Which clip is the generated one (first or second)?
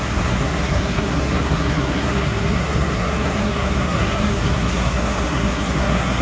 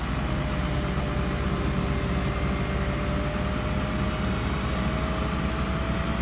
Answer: first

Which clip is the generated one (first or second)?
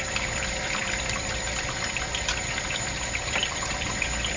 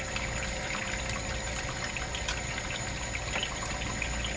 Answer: first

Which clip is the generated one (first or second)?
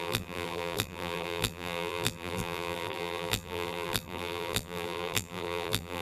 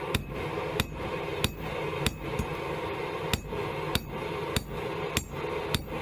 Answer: first